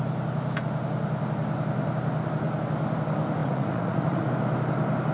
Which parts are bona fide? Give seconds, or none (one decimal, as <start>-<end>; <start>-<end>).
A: 0.0-3.4; 4.3-5.1